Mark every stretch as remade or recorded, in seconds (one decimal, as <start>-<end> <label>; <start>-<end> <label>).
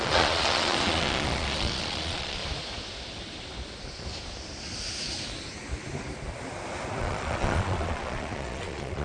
0.0-2.4 remade; 2.4-7.0 recorded; 7.0-9.0 remade